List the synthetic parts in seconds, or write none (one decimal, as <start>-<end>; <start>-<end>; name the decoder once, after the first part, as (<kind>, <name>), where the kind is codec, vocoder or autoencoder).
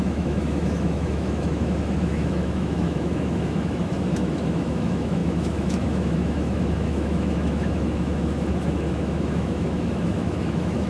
0.0-10.9 (autoencoder, DAC-VAE)